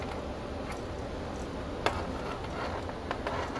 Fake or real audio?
real